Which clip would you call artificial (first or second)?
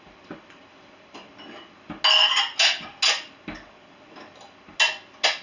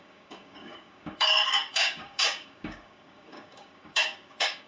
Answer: second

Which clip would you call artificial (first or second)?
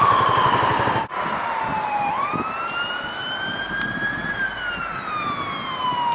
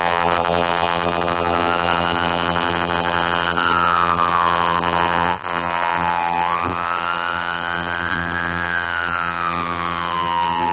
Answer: second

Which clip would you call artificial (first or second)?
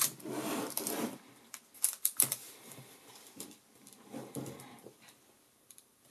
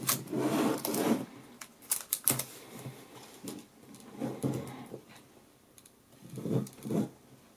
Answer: first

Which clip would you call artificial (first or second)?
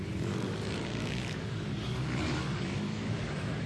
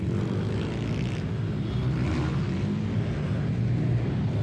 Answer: first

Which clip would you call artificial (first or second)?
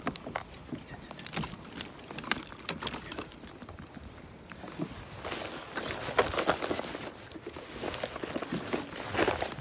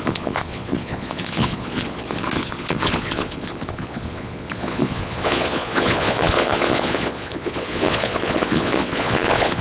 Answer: second